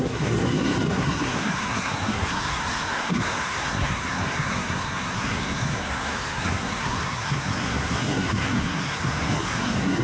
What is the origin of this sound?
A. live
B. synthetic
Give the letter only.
B